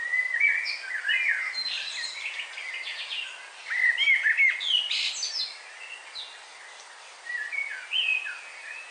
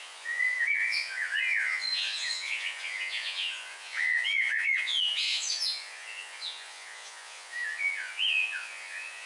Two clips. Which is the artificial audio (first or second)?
second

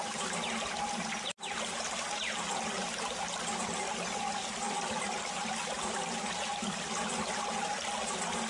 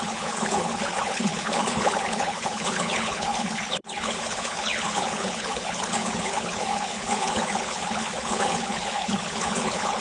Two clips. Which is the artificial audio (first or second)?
second